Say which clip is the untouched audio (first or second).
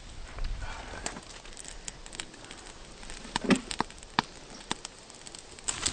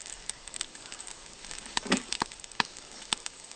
first